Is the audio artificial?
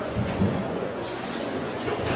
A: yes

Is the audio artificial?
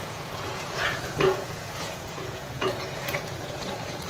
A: yes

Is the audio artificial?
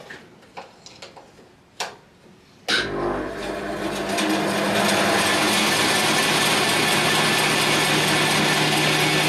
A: no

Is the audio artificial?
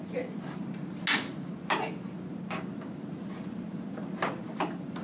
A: no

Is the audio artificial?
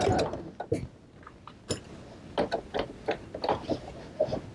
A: no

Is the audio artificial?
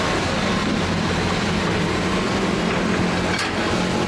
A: no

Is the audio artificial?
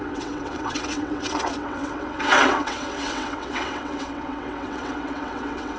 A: yes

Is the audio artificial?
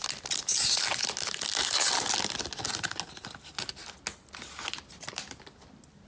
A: no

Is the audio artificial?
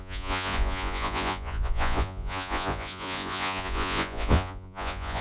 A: yes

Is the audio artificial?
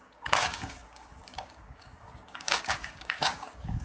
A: yes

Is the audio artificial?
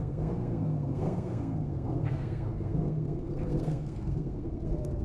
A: yes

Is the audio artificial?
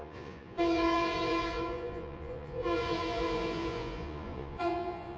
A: yes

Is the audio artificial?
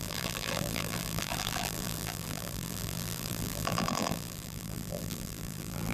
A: yes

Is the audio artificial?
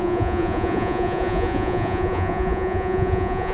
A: yes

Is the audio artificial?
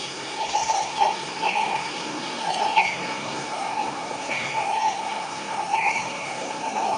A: yes